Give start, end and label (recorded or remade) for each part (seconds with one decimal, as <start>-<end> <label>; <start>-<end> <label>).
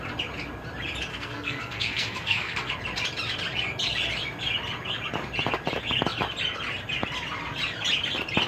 0.0-1.1 recorded; 1.1-2.7 remade; 2.7-8.5 recorded